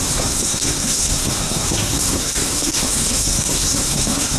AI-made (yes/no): yes